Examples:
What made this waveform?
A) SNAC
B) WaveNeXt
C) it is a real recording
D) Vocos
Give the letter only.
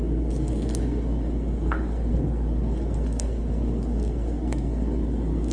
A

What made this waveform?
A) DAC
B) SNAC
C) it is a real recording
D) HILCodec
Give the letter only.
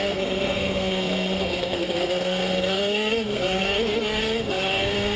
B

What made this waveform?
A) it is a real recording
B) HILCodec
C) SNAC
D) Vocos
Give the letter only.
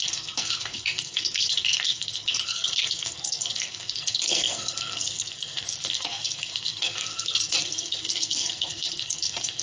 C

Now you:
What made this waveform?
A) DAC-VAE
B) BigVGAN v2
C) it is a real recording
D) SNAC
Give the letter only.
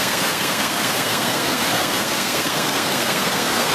D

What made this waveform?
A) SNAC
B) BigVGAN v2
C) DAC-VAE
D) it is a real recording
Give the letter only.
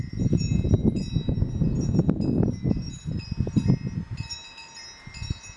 D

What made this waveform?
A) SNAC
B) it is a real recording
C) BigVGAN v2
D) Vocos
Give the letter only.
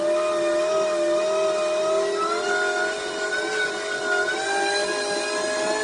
B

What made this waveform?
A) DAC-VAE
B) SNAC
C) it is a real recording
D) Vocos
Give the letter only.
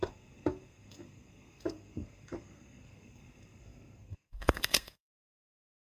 B